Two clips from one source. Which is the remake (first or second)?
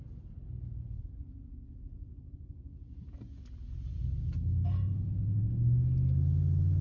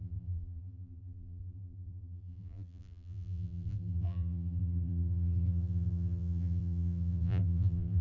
second